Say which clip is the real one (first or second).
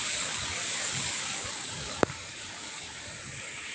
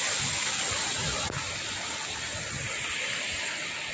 second